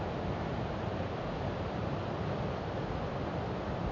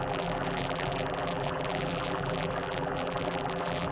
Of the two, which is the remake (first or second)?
second